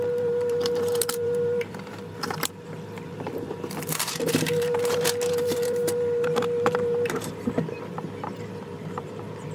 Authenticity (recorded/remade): remade